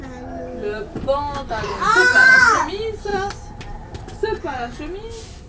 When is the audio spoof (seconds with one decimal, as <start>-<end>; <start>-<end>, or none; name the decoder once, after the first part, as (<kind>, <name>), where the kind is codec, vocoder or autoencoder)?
2.1-2.7 (vocoder, Vocos)